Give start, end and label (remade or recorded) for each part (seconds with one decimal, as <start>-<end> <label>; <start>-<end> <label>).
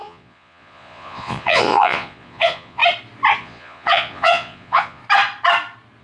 0.0-2.8 remade; 2.8-3.4 recorded; 3.4-5.0 remade; 5.0-6.0 recorded